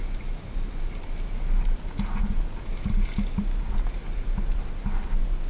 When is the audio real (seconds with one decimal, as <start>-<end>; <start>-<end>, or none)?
0.0-5.5

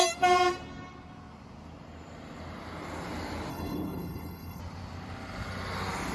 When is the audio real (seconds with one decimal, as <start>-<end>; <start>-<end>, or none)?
0.0-3.5; 4.6-6.1

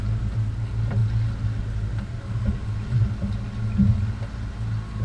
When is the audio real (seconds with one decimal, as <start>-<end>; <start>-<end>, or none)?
0.0-5.0

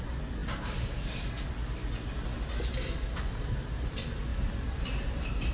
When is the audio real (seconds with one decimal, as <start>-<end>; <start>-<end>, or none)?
0.0-4.3

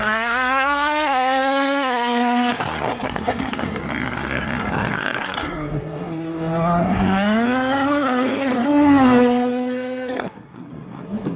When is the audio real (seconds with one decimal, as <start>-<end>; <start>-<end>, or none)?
none

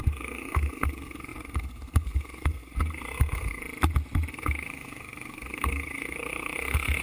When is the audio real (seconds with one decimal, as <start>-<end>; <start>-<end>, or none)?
3.6-4.3